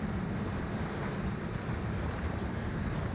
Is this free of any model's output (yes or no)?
no